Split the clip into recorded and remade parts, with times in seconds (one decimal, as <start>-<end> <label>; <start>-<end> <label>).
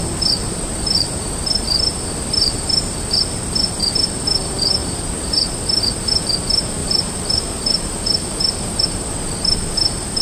0.0-0.4 recorded; 0.4-1.4 remade; 1.4-4.8 recorded; 4.8-5.5 remade; 5.5-6.8 recorded; 6.8-8.8 remade; 8.8-10.2 recorded